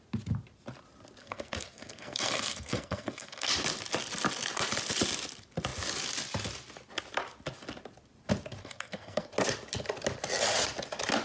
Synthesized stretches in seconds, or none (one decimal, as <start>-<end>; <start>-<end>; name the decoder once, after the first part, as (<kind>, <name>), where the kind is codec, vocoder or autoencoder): 1.2-3.5 (codec, SNAC); 8.6-9.3